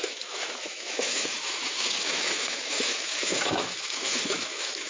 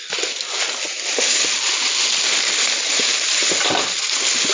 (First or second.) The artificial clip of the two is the first